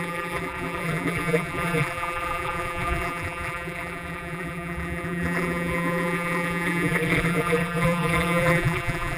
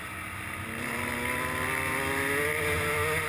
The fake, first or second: first